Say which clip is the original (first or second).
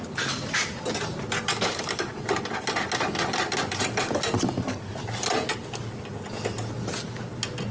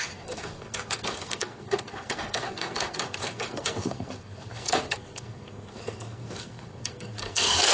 first